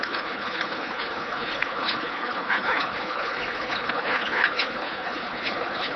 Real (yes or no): no